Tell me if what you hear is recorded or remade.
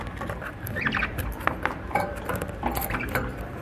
remade